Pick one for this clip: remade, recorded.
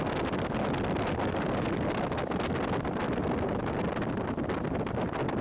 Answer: recorded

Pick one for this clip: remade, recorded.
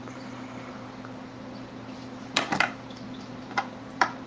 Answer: remade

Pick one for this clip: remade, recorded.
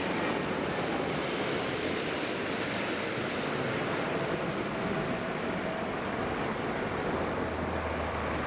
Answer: recorded